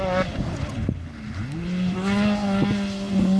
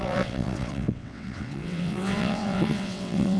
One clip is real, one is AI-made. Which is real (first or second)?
first